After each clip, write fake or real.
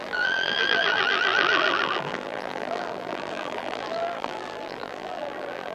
fake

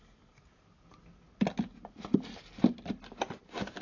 real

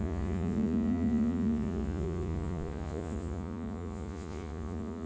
fake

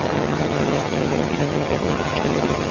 fake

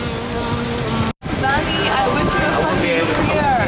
real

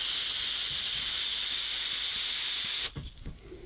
real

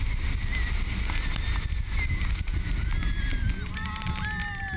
real